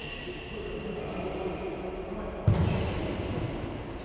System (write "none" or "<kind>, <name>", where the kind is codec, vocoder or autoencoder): none